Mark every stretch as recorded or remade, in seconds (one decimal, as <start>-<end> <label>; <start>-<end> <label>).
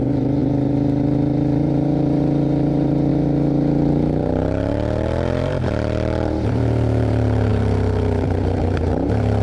0.0-9.4 remade